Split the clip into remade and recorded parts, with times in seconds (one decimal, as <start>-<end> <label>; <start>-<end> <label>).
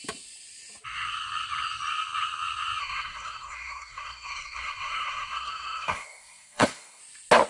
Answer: 0.0-2.8 recorded; 2.8-7.0 remade; 7.0-7.5 recorded